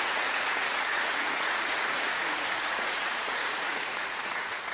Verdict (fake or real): fake